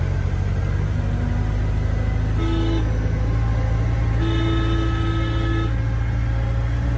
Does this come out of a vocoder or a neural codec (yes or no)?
no